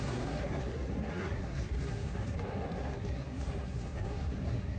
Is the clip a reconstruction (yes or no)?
yes